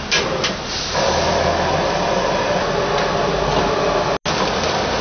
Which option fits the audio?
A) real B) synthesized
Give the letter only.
A